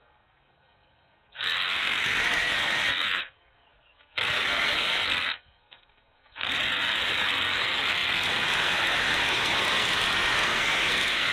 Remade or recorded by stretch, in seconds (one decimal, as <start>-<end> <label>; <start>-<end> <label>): 0.0-11.3 remade